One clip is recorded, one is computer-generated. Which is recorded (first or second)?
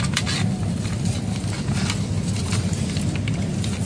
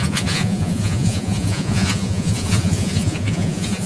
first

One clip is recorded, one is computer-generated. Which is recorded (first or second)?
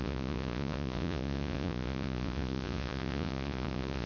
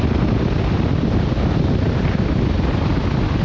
second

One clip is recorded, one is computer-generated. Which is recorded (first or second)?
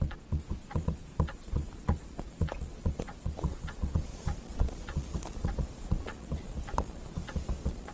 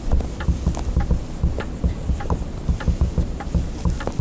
second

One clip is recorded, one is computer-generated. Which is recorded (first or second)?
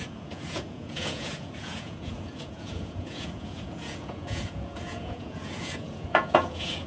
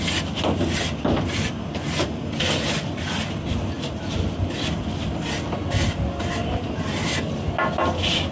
second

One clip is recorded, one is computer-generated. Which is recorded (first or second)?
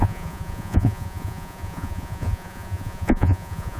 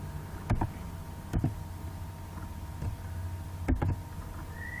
second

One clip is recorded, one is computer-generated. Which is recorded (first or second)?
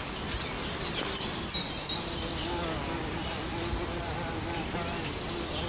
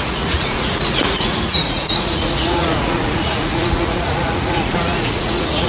first